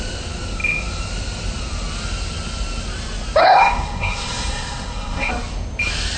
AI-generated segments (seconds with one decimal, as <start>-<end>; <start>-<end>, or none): 3.4-5.3